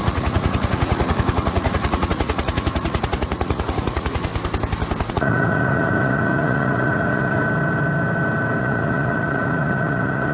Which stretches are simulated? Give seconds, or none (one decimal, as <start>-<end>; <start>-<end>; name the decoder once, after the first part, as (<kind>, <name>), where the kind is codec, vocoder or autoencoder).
0.0-4.3 (vocoder, Vocos); 5.1-7.4; 8.6-10.3